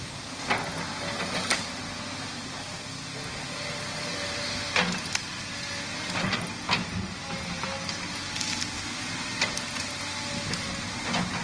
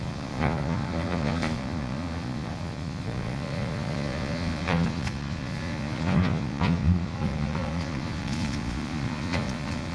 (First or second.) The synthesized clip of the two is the second